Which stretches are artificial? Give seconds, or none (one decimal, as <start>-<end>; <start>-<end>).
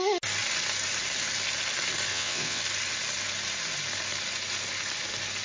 2.1-2.6